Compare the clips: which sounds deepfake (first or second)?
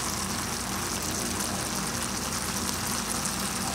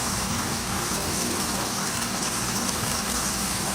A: second